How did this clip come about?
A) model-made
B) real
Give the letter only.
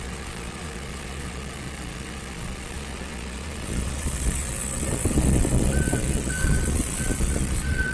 A